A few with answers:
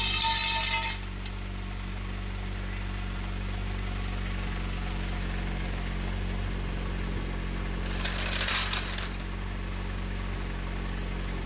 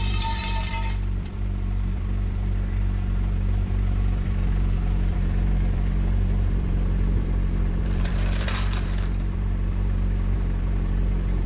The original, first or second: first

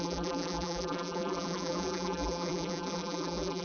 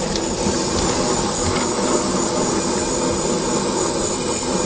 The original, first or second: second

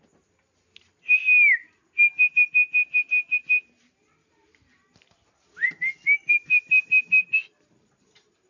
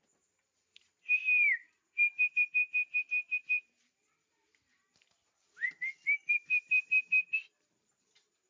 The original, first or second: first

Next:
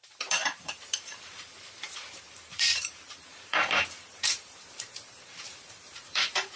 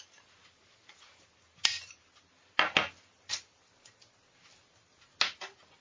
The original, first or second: second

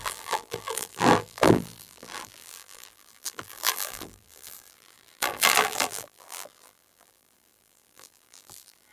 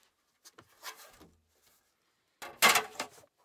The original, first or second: second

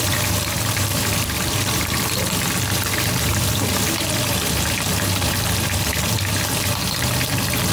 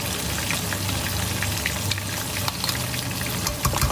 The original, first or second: second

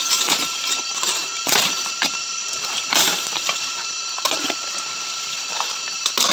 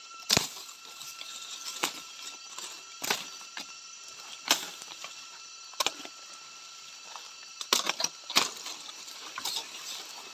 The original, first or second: second